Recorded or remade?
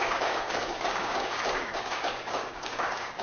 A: remade